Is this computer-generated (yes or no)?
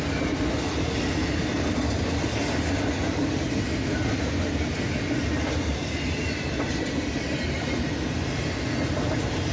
no